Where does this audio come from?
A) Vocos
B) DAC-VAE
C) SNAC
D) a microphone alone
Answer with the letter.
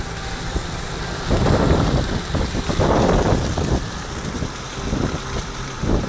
D